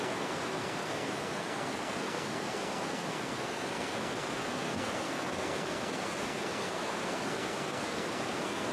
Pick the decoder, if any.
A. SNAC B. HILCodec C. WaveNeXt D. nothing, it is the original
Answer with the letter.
A